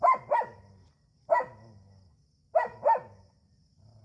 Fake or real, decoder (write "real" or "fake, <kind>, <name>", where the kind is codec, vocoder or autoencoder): real